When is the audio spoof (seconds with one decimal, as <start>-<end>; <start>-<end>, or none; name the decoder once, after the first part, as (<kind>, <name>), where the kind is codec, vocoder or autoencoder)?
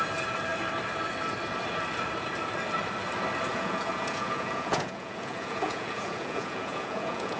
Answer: 3.5-7.4 (vocoder, Vocos)